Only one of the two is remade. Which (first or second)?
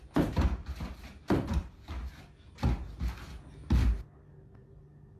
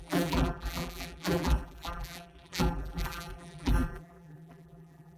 second